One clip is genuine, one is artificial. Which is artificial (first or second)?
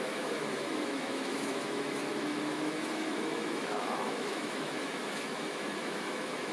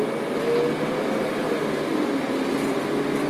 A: first